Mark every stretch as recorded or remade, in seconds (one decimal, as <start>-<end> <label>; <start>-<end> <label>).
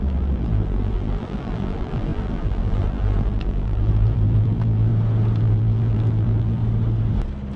0.0-4.9 remade; 4.9-5.4 recorded; 5.4-6.6 remade; 6.6-7.6 recorded